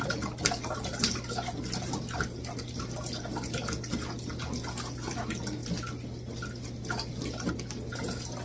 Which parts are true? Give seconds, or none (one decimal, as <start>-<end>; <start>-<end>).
0.0-8.4